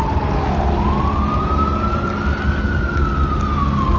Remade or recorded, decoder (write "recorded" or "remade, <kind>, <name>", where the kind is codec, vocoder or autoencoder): recorded